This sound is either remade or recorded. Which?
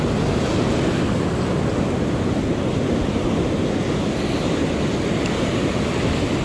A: recorded